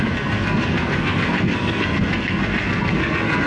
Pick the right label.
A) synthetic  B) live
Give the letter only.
A